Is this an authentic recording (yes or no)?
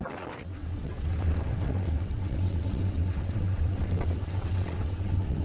no